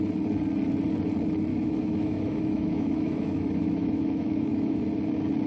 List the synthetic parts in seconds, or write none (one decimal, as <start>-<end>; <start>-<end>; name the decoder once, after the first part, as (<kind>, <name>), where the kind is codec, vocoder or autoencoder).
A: 1.5-4.8 (autoencoder, DAC-VAE)